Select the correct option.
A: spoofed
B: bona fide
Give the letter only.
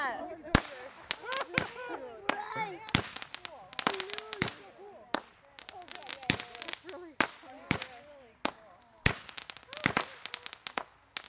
B